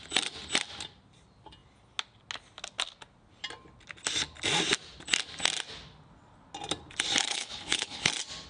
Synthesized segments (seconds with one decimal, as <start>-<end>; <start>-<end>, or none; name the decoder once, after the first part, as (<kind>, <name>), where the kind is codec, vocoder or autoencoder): 7.2-8.1 (codec, HILCodec)